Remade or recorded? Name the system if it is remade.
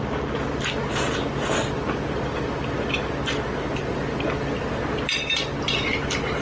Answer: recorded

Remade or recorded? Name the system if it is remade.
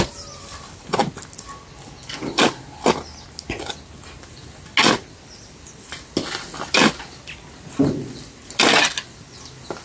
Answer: recorded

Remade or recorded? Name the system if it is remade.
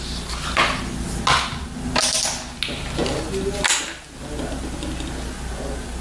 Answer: recorded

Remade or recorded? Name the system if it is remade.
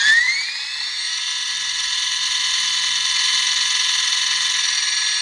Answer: recorded